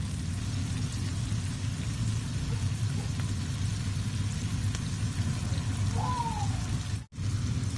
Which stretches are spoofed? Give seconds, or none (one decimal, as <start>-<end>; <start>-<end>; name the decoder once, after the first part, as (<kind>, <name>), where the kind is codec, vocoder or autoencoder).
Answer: none